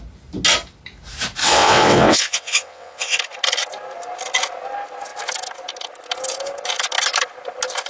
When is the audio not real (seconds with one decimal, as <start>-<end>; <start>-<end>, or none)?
1.4-3.2